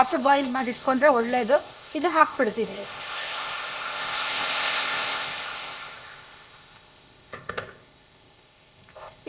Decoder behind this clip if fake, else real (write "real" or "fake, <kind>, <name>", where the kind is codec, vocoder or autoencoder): fake, codec, ZipCodec